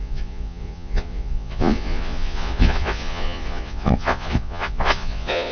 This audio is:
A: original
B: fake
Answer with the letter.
B